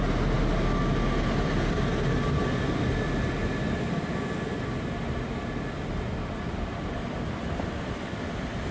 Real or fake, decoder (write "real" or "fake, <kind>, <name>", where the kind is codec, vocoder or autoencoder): real